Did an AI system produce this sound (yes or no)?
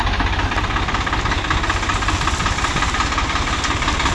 no